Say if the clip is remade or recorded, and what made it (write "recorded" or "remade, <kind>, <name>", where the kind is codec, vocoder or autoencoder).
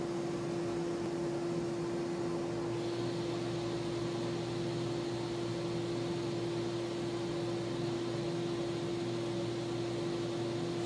recorded